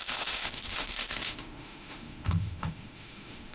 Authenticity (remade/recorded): remade